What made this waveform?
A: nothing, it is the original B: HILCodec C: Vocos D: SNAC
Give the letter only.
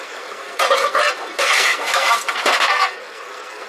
D